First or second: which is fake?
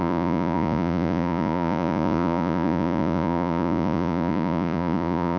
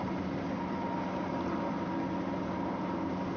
first